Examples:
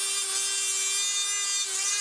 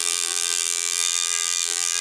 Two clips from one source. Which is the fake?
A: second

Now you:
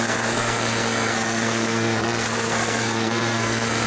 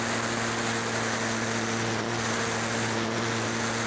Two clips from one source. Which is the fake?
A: first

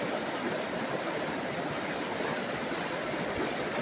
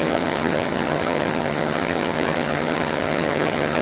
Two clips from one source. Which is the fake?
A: second